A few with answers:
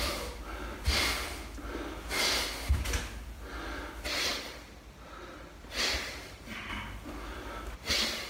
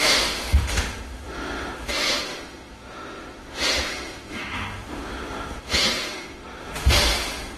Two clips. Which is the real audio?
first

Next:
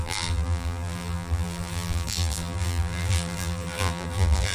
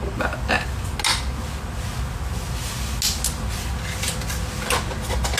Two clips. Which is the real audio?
second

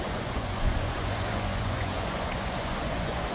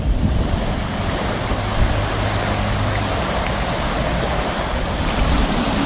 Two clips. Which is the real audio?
second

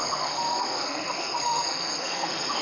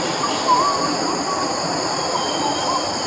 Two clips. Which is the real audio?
second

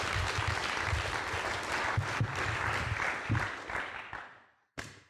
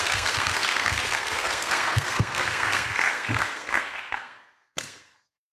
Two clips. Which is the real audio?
first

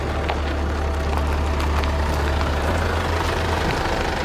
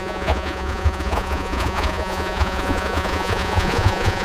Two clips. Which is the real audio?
first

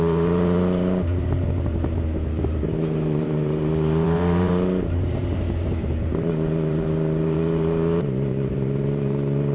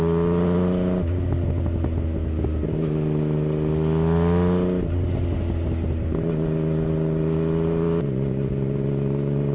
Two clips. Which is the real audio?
second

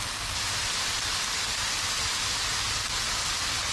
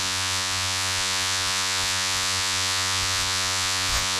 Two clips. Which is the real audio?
first